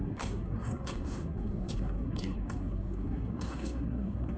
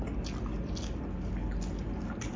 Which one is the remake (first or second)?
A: first